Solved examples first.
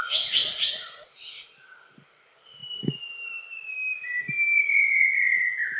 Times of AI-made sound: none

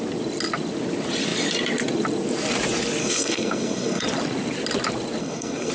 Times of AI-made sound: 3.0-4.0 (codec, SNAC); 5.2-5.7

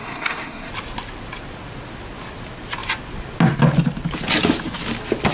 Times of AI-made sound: 0.0-0.7 (codec, SNAC)

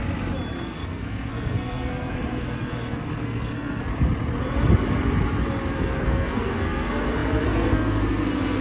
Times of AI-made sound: 0.6-3.9 (codec, SNAC); 5.7-8.6

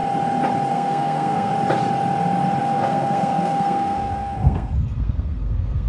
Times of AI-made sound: 0.7-1.5 (codec, SNAC); 2.6-5.9

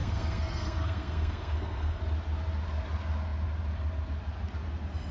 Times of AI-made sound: 0.0-2.0 (codec, SNAC)